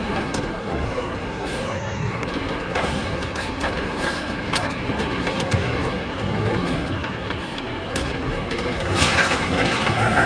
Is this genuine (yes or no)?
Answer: no